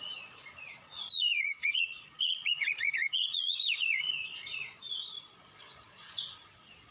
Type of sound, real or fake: fake